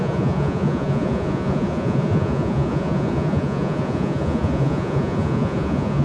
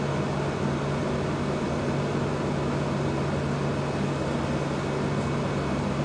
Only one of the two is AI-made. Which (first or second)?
first